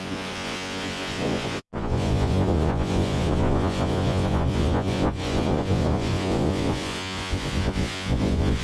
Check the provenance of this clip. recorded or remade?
remade